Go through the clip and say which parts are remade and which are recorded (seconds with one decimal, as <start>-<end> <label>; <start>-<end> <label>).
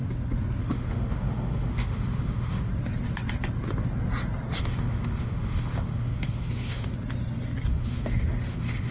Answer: 0.0-0.6 recorded; 0.6-2.7 remade; 2.7-4.6 recorded; 4.6-6.9 remade; 6.9-7.7 recorded; 7.7-8.9 remade